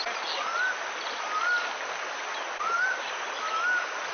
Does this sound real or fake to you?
real